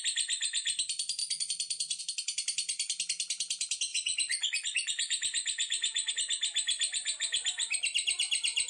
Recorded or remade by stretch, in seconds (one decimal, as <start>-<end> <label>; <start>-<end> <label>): 0.0-1.2 recorded; 1.2-2.0 remade; 2.0-3.9 recorded; 3.9-6.1 remade; 6.1-8.7 recorded